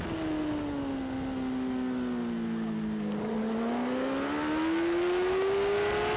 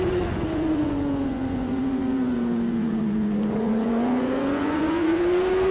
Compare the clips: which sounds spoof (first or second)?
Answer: second